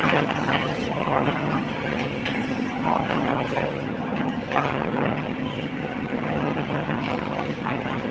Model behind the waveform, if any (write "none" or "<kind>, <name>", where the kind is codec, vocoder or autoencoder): vocoder, HiFi-GAN